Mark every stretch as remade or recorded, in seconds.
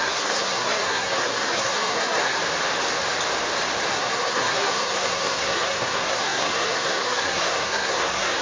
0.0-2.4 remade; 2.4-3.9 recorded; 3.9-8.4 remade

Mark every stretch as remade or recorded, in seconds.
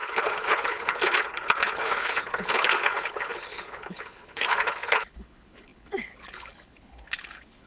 0.0-7.7 remade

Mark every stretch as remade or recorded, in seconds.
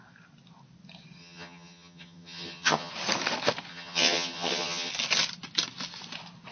0.0-1.2 recorded; 1.2-2.9 remade; 2.9-3.7 recorded; 3.7-4.9 remade; 4.9-6.5 recorded